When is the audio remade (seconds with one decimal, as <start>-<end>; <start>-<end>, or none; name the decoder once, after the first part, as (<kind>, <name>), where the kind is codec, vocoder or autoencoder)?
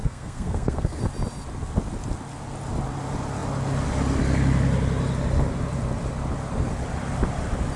0.0-1.0 (codec, SNAC)